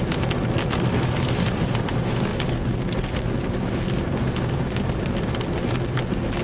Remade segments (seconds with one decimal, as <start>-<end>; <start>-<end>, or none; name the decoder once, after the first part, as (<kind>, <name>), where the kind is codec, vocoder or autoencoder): none